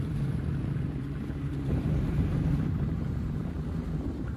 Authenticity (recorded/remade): remade